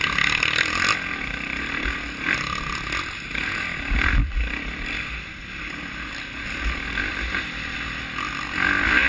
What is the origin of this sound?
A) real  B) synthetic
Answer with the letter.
A